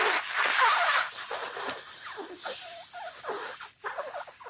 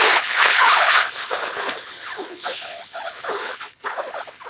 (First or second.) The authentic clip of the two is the first